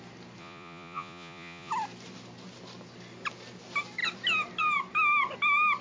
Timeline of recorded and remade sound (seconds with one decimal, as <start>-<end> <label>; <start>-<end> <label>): 0.0-0.4 recorded; 0.4-1.7 remade; 1.7-5.8 recorded